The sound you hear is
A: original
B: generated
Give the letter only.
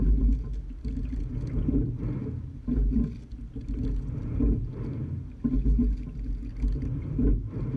A